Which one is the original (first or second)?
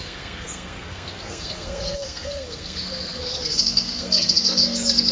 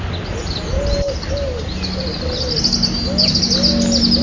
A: second